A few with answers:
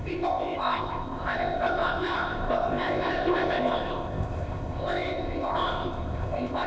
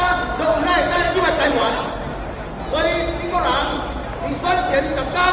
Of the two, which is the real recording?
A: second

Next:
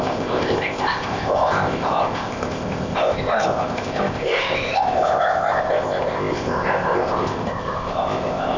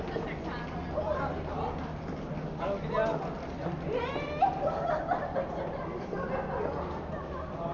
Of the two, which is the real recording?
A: second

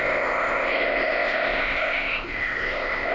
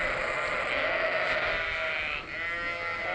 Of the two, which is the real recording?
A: second